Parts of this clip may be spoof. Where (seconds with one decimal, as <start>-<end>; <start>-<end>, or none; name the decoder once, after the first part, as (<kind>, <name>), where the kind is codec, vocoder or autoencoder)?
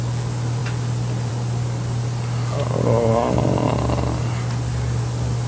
none